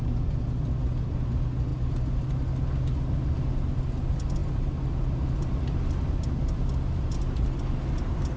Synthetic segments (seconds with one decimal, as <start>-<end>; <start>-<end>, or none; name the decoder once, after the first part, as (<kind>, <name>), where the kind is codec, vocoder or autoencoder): none